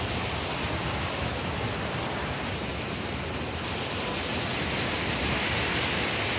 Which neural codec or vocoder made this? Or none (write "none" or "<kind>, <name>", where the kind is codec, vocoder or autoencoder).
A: none